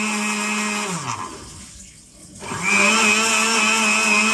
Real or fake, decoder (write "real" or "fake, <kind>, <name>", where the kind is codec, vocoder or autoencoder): real